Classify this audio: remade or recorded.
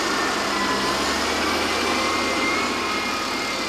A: recorded